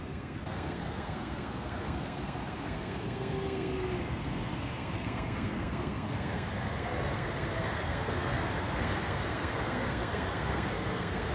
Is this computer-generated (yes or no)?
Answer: yes